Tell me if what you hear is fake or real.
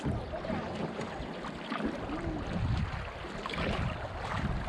real